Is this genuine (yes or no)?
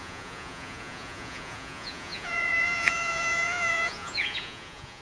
no